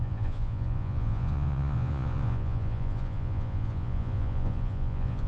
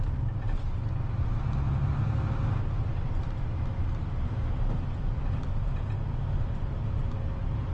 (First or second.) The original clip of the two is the second